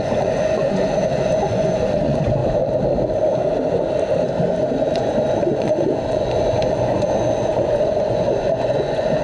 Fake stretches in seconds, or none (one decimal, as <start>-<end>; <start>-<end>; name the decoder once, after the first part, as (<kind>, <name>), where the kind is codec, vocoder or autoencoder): 0.0-2.4 (vocoder, Vocos); 4.7-9.2